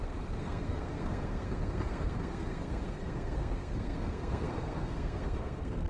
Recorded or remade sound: remade